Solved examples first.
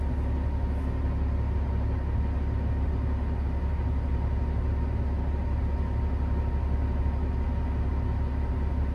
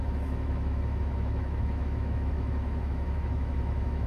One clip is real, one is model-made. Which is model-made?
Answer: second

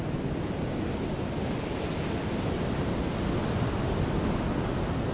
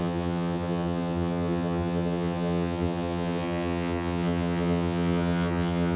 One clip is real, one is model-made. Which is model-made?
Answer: second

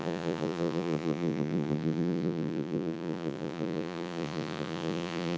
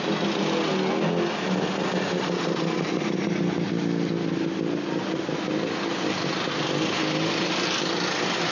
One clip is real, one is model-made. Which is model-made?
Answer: first